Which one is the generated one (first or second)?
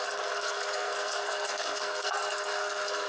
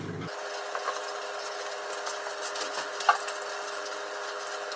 first